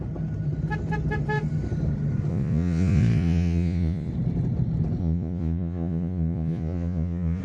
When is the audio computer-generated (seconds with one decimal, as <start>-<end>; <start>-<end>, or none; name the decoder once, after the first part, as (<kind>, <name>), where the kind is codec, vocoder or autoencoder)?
2.3-4.1 (vocoder, Vocos); 5.0-7.4